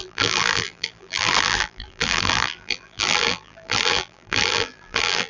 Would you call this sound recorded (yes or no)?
no